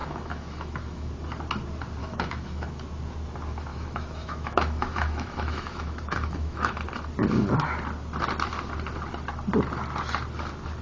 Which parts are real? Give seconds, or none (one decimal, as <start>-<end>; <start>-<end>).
1.1-2.0; 2.7-3.7; 6.8-10.8